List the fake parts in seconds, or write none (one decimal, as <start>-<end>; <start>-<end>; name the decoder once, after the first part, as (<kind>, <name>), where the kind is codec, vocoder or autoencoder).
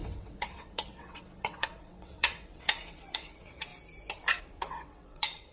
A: 0.0-3.7 (vocoder, WaveNeXt); 4.4-5.5